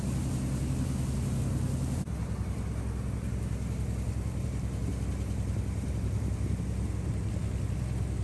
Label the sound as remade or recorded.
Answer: recorded